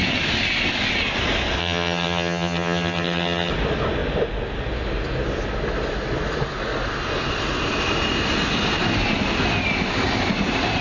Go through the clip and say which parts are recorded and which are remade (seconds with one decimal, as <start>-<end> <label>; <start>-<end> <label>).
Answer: 0.0-1.6 recorded; 1.6-3.5 remade; 3.5-10.8 recorded